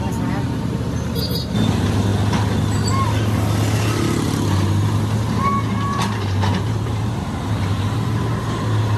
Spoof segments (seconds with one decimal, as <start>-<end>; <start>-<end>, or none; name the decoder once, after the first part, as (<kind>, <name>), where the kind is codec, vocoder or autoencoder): 0.0-2.1 (vocoder, BigVGAN v2); 5.4-9.0

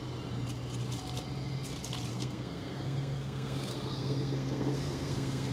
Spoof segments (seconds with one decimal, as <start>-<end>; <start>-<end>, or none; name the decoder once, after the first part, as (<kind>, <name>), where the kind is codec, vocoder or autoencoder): 2.1-5.5 (codec, SNAC)

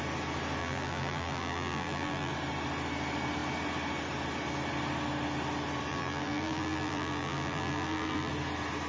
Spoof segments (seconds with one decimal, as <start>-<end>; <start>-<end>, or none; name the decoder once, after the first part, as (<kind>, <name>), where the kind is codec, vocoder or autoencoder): 0.6-2.3 (vocoder, BigVGAN v2); 5.9-8.3

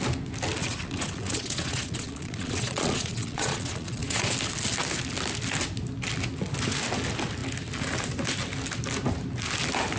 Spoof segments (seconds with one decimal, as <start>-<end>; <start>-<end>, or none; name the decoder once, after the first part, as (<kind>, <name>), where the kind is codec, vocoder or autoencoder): 0.6-4.3 (vocoder, Vocos)